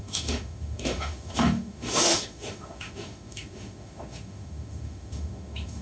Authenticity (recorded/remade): remade